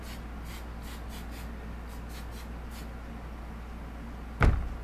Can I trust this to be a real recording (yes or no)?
yes